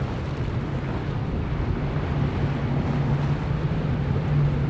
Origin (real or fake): real